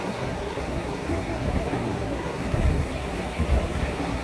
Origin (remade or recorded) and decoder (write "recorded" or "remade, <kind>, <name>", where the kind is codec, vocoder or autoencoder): remade, codec, SNAC